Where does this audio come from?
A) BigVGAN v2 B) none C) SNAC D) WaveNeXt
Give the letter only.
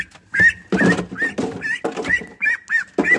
B